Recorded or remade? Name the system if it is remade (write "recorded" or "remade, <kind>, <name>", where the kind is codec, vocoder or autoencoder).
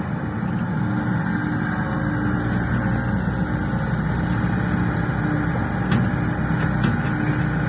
recorded